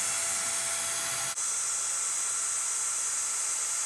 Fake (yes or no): no